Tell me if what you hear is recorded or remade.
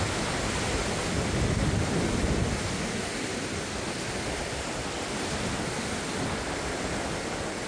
recorded